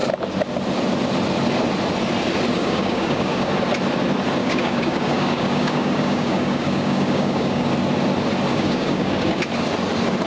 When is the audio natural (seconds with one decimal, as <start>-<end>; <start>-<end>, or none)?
0.0-2.5; 3.5-4.4; 7.7-8.5; 9.4-10.3